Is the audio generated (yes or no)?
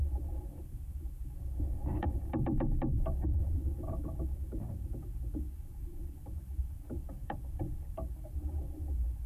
yes